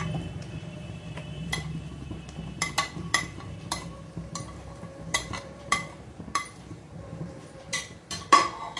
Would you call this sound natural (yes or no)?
no